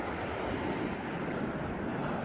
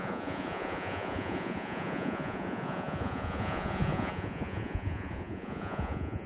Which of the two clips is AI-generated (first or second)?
second